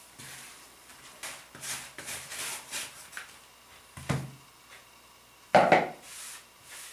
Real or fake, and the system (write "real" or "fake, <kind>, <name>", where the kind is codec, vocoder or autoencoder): real